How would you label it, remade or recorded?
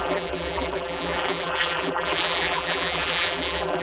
remade